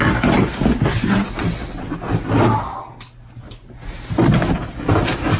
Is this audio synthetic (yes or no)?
no